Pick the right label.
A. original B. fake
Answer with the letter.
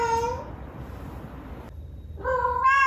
A